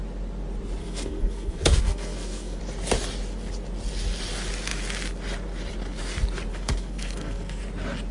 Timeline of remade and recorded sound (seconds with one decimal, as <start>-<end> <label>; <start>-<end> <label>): 0.0-0.8 recorded; 0.8-2.6 remade; 2.6-6.5 recorded; 6.5-7.6 remade; 7.6-8.1 recorded

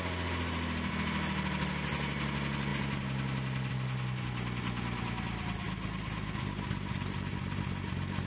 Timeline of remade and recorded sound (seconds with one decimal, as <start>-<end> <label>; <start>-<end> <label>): 0.0-8.3 recorded

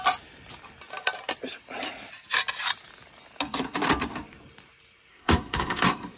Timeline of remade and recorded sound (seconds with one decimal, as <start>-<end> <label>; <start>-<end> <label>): 0.0-5.1 recorded; 5.1-6.2 remade